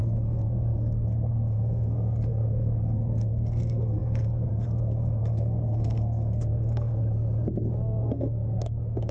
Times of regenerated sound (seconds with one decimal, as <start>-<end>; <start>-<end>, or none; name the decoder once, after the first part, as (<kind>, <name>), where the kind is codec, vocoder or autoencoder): 0.0-7.0 (codec, SNAC); 8.0-9.1